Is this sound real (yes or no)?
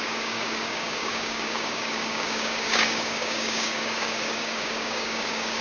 no